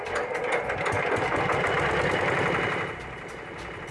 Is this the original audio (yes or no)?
yes